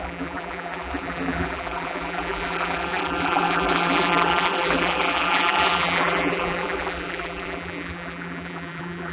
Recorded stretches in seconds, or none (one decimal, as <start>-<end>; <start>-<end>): none